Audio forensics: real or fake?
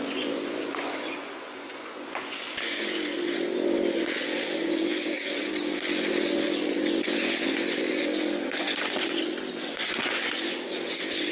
fake